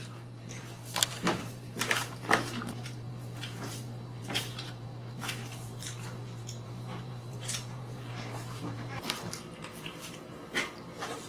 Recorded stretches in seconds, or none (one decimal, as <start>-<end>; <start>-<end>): none